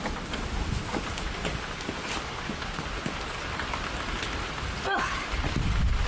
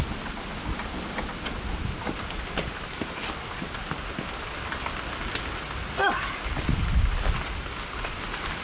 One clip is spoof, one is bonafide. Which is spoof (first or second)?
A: first